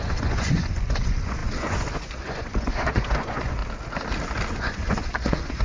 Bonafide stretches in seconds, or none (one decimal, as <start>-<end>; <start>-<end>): 3.6-4.5